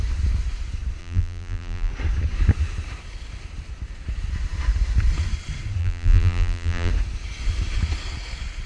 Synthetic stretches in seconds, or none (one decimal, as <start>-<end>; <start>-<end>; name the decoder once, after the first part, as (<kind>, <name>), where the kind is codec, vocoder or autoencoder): 1.0-1.9 (vocoder, BigVGAN v2); 5.8-6.9